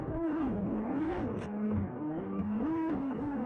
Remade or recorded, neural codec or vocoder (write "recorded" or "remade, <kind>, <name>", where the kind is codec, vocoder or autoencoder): remade, codec, DAC